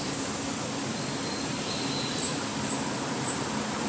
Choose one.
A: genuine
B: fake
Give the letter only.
A